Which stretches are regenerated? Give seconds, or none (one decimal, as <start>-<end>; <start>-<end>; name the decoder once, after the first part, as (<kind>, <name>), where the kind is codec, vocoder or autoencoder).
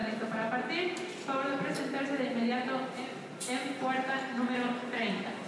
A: none